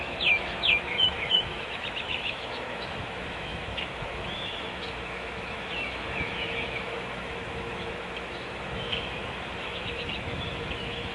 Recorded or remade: remade